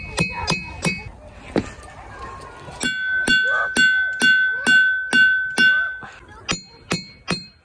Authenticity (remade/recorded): recorded